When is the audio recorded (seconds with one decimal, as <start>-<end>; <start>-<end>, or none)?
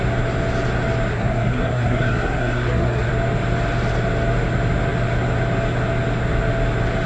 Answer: 0.0-1.1; 3.1-7.1